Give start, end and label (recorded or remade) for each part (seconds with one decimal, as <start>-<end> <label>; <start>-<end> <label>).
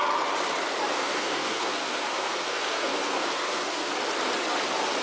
0.0-0.9 recorded; 0.9-3.9 remade; 3.9-5.0 recorded